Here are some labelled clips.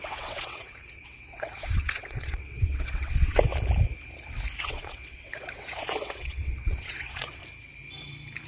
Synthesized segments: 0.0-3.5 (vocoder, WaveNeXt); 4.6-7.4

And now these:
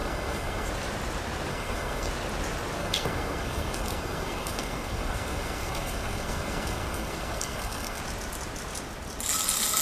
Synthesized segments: 0.0-0.7 (codec, SNAC); 1.5-2.1; 2.8-8.0

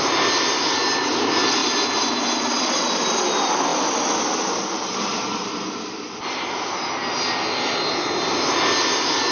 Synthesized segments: none

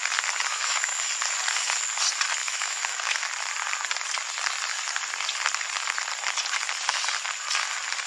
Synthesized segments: 0.5-1.0 (autoencoder, DAC-VAE); 2.4-3.3

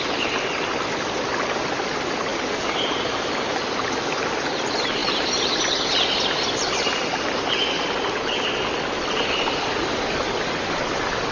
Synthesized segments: 2.3-3.1 (vocoder, BigVGAN v2); 5.0-5.6

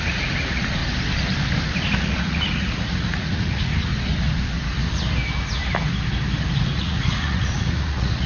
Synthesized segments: 0.0-0.8 (vocoder, Vocos); 2.0-3.9; 6.6-8.3